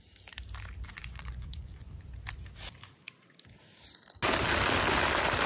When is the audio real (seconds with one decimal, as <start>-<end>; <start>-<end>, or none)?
0.0-1.0; 1.9-5.5